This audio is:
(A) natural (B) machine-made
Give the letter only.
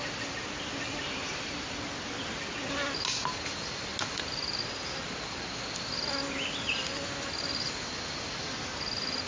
A